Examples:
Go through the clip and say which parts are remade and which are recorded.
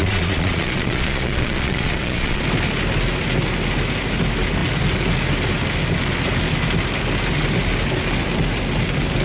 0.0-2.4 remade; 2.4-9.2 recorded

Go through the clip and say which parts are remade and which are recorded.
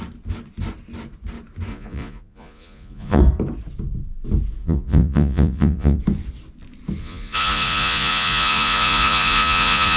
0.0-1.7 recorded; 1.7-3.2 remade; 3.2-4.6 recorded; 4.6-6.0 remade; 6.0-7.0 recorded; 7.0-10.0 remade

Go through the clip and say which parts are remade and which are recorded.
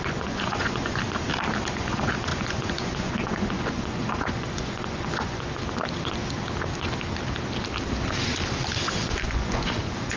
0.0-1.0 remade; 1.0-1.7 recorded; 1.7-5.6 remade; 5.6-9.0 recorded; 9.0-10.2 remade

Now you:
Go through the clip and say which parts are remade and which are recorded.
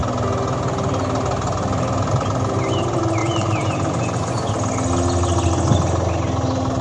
0.0-3.2 recorded; 3.2-4.5 remade; 4.5-6.8 recorded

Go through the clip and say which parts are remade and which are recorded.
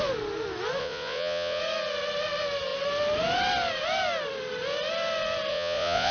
0.0-0.8 recorded; 0.8-1.6 remade; 1.6-5.5 recorded; 5.5-6.1 remade